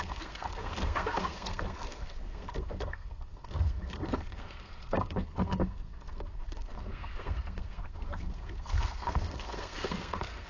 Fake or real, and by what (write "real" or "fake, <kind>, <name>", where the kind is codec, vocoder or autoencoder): fake, codec, SNAC